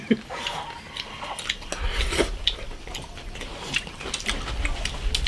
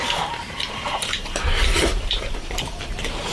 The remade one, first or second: second